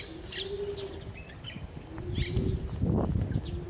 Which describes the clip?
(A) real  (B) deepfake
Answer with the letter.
A